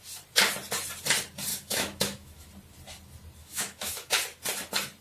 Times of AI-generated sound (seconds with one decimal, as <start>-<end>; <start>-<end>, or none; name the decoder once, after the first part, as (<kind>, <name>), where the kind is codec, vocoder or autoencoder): 1.5-2.5 (autoencoder, DAC-VAE); 3.4-4.1